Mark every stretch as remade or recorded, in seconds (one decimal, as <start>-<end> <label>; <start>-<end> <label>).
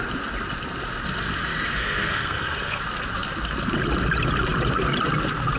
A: 0.0-1.7 recorded; 1.7-2.8 remade; 2.8-5.6 recorded